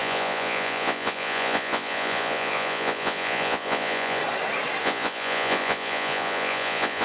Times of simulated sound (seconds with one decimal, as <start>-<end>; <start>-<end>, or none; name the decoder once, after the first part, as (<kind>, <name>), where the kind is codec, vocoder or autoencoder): 0.0-4.2 (vocoder, Vocos); 4.8-7.0